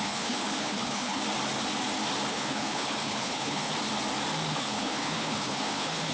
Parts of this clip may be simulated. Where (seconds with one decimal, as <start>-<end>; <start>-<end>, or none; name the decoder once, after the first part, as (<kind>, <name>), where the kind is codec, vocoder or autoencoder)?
0.0-1.2 (codec, HILCodec); 2.3-3.7; 4.5-6.1